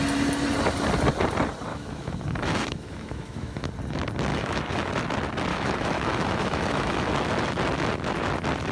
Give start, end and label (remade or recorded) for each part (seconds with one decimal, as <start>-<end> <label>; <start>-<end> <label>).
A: 0.0-1.7 recorded; 1.7-3.7 remade; 3.7-4.3 recorded; 4.3-4.9 remade; 4.9-5.5 recorded; 5.5-7.1 remade; 7.1-8.7 recorded